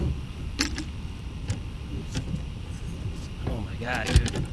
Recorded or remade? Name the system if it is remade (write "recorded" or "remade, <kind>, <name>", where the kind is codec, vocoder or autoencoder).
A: recorded